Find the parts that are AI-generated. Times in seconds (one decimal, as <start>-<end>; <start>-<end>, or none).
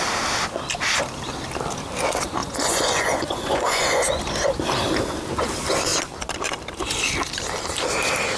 2.4-4.2